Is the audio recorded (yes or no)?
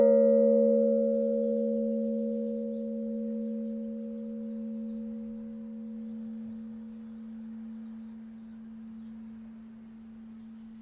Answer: yes